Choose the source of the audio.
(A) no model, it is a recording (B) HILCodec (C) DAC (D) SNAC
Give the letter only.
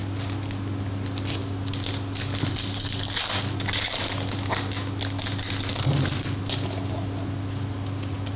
A